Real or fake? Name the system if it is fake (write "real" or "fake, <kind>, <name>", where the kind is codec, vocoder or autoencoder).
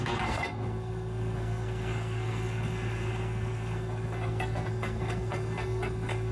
fake, codec, SNAC